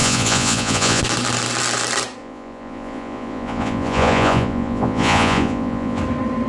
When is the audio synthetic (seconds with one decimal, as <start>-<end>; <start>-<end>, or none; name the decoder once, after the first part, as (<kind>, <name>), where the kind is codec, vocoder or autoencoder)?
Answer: 0.0-1.0 (vocoder, Vocos); 2.2-6.0